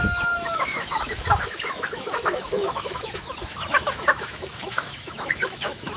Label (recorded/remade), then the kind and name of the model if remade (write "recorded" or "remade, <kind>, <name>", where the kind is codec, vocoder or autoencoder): remade, autoencoder, DAC-VAE